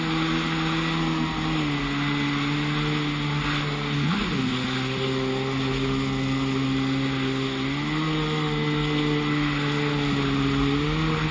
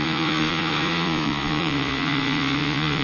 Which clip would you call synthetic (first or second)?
second